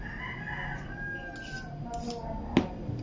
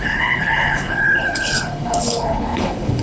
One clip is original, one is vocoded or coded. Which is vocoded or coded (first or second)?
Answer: second